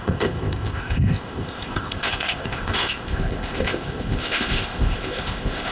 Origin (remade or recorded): remade